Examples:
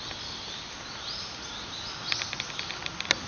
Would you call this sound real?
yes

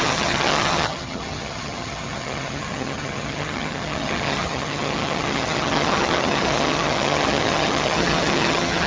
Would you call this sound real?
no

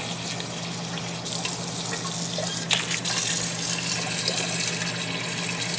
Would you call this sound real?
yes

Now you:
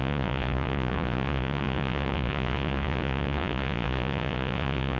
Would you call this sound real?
no